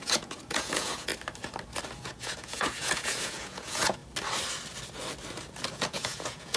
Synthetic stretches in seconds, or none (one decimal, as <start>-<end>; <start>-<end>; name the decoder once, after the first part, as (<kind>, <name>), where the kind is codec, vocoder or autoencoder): 0.0-1.1 (vocoder, Vocos); 2.0-4.0; 5.7-6.6

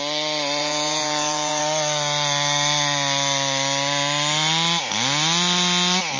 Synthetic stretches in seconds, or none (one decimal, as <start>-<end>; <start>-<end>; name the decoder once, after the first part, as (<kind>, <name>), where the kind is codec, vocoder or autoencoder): 0.6-1.6 (vocoder, Vocos)

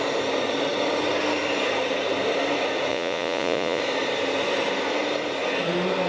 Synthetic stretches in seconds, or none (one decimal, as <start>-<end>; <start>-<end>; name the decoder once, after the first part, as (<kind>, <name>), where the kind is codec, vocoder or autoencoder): 2.9-3.8 (vocoder, Vocos)

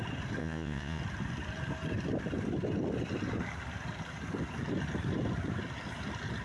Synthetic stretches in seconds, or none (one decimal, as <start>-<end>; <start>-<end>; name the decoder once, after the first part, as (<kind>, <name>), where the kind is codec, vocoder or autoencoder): 0.4-1.0 (vocoder, Vocos)

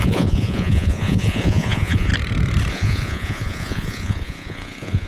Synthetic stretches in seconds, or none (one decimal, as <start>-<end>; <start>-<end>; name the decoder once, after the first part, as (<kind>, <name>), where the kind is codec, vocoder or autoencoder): 0.0-2.1 (vocoder, Vocos); 2.7-5.1

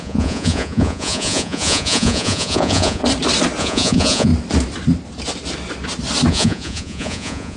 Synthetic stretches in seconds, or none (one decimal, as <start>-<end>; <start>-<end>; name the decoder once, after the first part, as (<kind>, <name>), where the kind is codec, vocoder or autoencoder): 0.0-3.0 (vocoder, Vocos); 3.6-4.3; 6.3-7.6